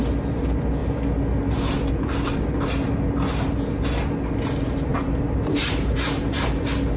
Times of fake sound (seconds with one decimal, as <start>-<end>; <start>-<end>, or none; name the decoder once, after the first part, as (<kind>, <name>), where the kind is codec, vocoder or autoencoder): 4.9-6.6 (vocoder, BigVGAN v2)